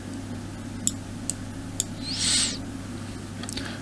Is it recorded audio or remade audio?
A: recorded